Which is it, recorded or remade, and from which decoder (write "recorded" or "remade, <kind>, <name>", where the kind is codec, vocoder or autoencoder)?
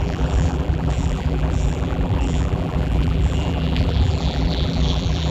remade, vocoder, BigVGAN v2